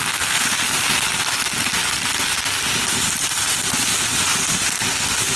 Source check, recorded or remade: recorded